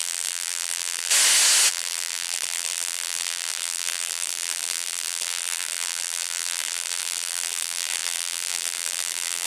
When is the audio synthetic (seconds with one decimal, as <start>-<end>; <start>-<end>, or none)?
0.0-1.1; 1.7-9.5